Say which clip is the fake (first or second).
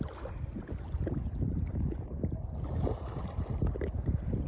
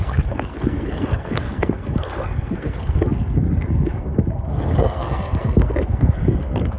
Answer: second